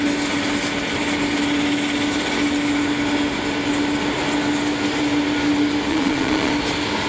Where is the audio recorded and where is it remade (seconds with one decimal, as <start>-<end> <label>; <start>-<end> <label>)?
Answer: 0.0-5.9 recorded; 5.9-6.5 remade; 6.5-7.1 recorded